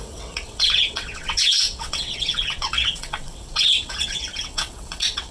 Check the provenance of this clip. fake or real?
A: fake